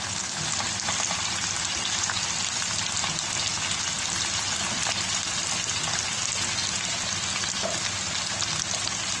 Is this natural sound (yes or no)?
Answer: yes